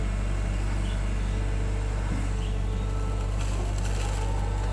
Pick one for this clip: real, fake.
real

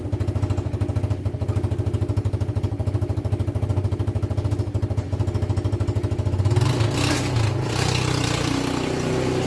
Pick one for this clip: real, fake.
real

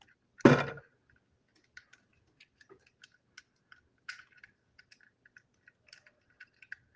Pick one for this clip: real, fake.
real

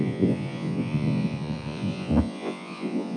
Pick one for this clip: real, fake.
fake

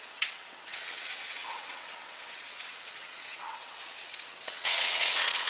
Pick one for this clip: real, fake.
fake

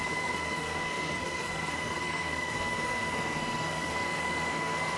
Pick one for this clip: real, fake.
fake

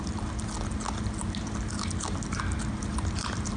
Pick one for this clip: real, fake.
real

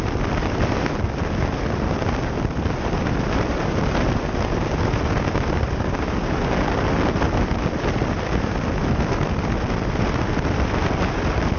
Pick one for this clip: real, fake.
real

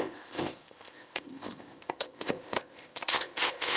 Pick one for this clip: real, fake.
fake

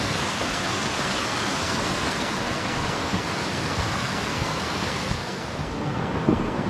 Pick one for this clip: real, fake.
fake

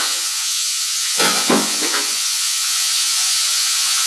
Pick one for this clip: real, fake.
fake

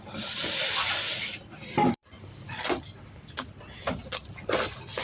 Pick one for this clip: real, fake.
fake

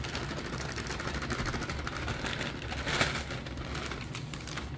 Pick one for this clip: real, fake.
real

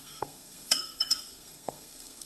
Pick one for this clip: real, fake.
fake